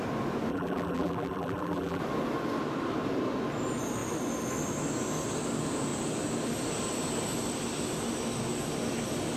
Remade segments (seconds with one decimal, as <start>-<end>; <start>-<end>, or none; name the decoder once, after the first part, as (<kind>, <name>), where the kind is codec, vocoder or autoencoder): 0.5-2.0 (vocoder, BigVGAN v2)